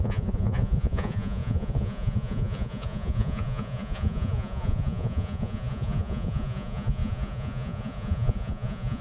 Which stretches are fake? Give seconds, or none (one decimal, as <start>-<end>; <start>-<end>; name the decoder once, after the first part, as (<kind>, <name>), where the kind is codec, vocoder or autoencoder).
0.0-9.0 (vocoder, Vocos)